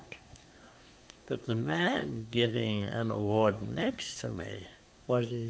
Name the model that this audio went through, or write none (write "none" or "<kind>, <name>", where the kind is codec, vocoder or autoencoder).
codec, SNAC